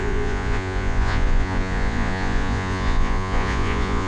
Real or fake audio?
fake